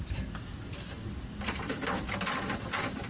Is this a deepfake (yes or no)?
no